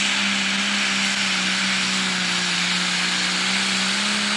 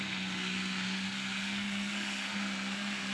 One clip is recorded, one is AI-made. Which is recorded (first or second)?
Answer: first